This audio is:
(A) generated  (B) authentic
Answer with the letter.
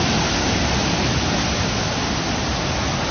B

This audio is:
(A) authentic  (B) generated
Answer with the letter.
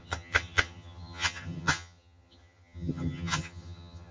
B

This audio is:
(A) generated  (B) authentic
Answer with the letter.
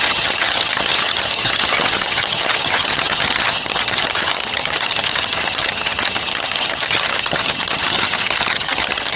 A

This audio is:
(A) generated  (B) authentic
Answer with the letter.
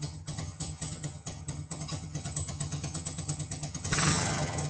A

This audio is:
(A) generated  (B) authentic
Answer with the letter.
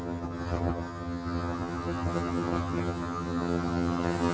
A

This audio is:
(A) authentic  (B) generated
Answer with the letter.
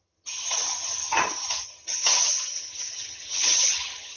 B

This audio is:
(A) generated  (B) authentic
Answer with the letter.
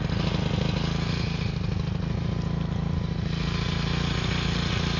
B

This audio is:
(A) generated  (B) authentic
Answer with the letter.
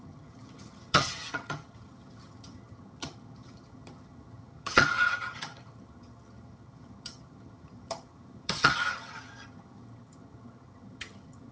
A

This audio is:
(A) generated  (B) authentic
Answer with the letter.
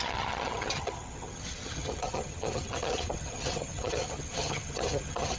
A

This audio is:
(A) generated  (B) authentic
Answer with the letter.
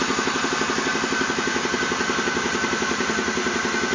B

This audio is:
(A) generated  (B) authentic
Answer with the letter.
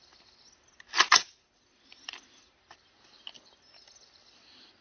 B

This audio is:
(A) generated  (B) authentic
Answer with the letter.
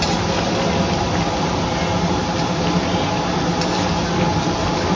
B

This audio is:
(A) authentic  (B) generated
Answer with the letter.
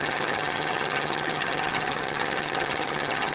B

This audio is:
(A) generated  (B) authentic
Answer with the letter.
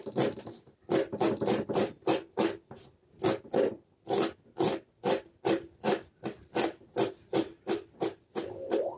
B